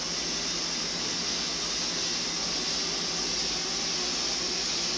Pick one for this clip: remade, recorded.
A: recorded